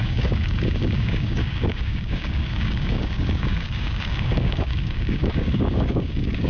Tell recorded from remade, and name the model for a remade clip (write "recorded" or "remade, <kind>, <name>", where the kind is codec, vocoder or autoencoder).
remade, codec, DAC